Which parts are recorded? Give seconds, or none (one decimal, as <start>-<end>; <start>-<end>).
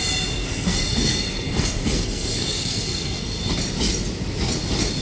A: 0.0-0.4; 3.4-5.0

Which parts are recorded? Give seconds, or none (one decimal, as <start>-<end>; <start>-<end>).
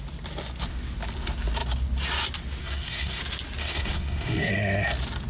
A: 0.0-2.6; 3.2-3.6; 4.5-5.3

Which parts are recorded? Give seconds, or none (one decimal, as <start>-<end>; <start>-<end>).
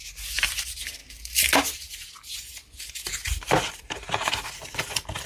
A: 0.0-5.3